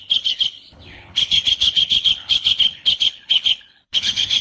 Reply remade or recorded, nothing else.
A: remade